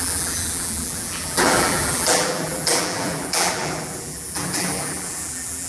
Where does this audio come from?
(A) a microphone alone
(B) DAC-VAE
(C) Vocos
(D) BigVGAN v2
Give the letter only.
D